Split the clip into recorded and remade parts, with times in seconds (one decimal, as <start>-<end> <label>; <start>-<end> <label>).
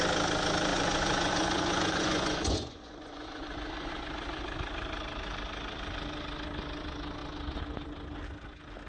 0.0-0.7 recorded; 0.7-4.1 remade; 4.1-8.9 recorded